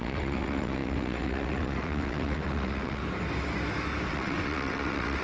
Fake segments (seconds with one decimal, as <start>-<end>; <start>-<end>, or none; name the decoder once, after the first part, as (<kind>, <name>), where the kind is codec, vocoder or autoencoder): 0.0-3.0 (vocoder, WaveNeXt); 4.1-5.2